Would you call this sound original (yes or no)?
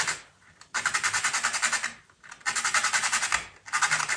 yes